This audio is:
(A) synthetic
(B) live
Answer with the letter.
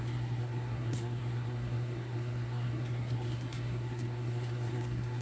A